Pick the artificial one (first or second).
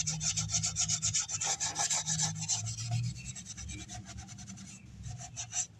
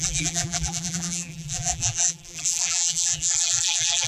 second